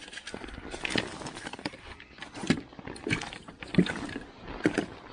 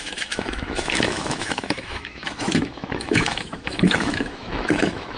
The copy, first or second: second